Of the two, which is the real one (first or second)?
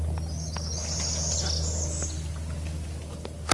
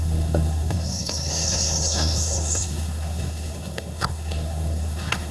first